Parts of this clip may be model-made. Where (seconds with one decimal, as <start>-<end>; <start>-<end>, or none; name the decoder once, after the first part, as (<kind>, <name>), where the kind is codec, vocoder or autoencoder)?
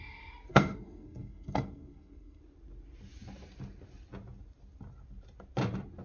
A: 0.5-2.4 (codec, SNAC)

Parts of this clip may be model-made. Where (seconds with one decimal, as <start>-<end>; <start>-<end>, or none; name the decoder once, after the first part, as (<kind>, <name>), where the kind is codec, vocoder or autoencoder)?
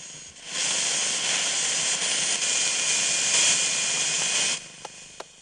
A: none